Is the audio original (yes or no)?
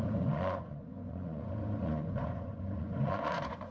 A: no